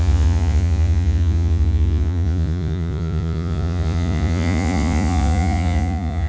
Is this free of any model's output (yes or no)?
no